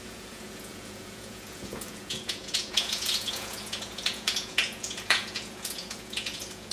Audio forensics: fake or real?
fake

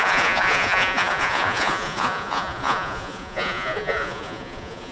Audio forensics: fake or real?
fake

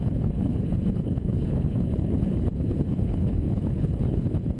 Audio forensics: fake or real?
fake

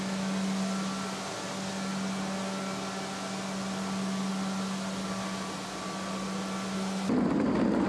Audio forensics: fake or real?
real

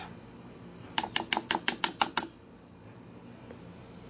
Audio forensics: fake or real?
real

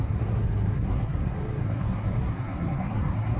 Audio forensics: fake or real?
fake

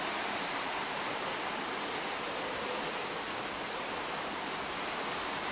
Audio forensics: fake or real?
real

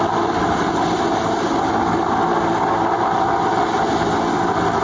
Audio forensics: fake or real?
real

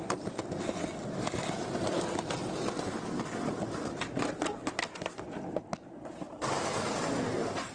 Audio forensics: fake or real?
real